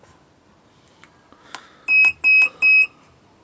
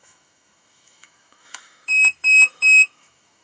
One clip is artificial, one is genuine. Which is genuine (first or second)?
first